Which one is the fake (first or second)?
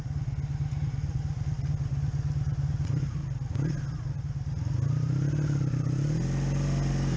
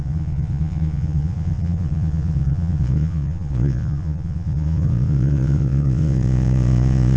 second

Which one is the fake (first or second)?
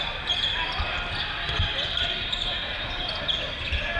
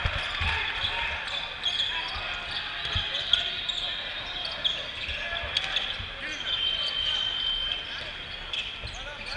first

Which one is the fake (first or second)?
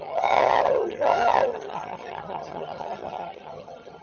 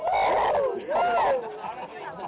first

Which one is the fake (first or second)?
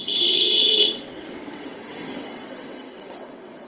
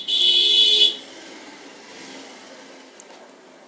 first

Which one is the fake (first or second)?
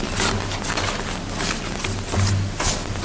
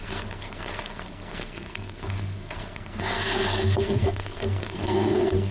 second